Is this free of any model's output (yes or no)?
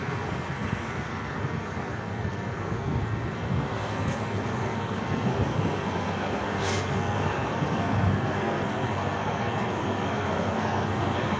no